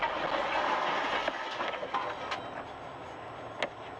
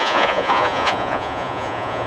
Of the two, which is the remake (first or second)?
second